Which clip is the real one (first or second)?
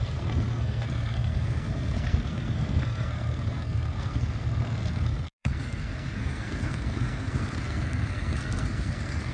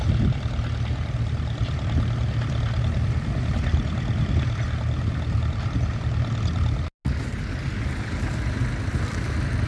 second